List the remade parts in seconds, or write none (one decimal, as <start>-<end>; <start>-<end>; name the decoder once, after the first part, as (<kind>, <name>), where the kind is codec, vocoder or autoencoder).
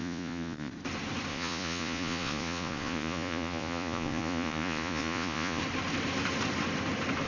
0.0-0.7 (vocoder, Vocos); 1.3-5.6